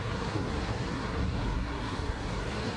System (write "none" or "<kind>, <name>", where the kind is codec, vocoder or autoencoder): codec, SNAC